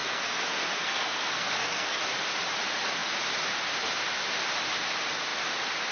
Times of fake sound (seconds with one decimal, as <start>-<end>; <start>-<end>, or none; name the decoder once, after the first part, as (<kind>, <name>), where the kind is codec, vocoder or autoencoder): 0.0-2.0 (codec, SNAC)